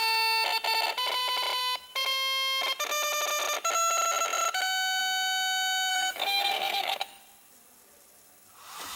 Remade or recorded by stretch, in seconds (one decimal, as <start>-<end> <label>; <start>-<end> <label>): 0.0-5.9 recorded; 5.9-7.2 remade; 7.2-9.0 recorded